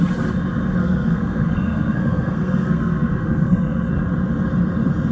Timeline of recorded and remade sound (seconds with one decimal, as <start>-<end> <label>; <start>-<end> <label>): 0.0-0.8 recorded; 0.8-3.9 remade; 3.9-5.1 recorded